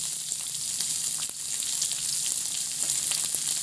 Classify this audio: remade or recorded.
recorded